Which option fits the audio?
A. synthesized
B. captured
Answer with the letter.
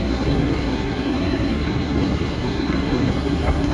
A